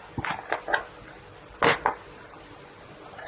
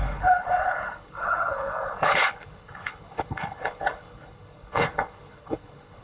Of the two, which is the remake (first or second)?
second